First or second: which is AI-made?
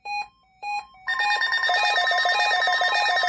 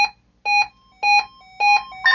first